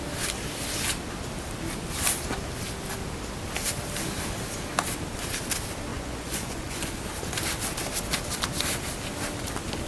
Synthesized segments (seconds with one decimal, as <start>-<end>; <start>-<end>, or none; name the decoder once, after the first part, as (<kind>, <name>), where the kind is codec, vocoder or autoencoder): 5.9-6.9 (vocoder, Vocos)